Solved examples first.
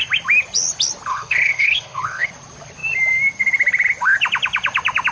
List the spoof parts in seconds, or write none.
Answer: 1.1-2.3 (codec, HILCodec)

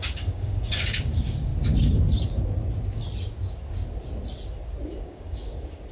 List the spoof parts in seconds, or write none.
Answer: 0.0-1.5 (codec, DAC); 5.0-5.9

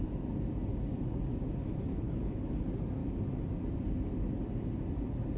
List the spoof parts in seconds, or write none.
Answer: 1.9-2.5 (codec, HILCodec)

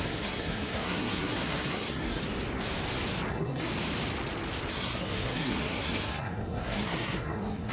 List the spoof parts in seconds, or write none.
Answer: 0.0-2.2 (codec, SNAC); 3.3-3.7; 4.7-7.7

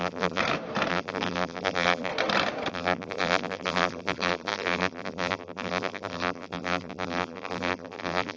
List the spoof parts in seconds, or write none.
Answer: 0.0-0.4 (vocoder, BigVGAN v2); 0.9-2.1; 2.7-8.4

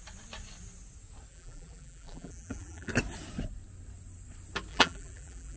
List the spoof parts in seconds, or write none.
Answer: 1.3-2.9 (vocoder, BigVGAN v2); 4.7-5.6

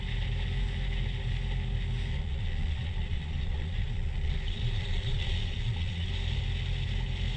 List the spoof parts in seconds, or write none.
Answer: 2.1-6.1 (vocoder, Vocos)